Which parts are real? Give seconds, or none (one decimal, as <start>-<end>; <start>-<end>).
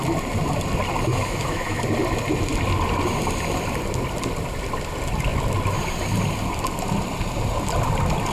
0.0-1.1; 1.8-8.3